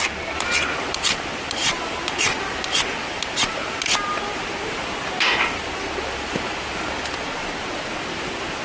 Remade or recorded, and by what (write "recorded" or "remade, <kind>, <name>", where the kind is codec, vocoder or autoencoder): recorded